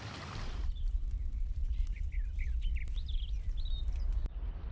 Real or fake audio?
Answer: fake